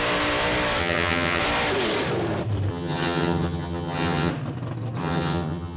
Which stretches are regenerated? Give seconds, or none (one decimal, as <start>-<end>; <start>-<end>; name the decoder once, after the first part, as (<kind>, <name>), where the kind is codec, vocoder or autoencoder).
0.8-1.4 (vocoder, HiFi-GAN); 2.7-4.3; 5.0-5.8